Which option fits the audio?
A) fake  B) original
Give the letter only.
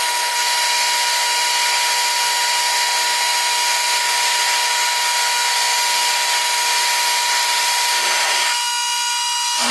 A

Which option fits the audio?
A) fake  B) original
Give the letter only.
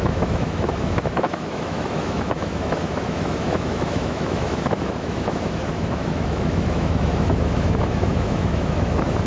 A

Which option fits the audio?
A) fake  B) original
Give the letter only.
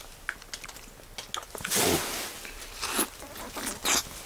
B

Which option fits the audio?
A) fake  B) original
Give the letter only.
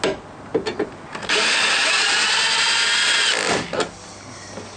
B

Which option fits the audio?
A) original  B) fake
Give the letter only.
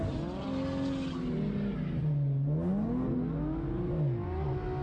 A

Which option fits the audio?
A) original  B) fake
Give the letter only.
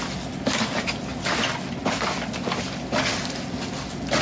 A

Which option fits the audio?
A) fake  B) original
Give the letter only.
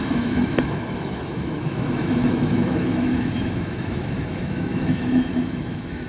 A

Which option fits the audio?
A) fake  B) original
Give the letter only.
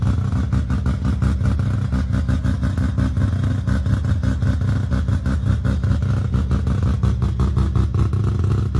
B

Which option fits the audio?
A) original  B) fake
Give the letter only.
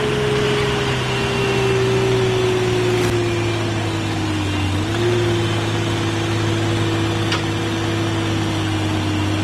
A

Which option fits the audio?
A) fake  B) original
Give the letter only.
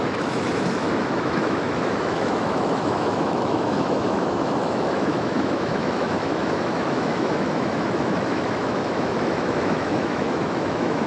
A